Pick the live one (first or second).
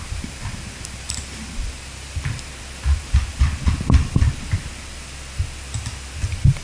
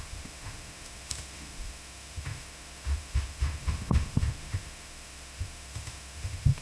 first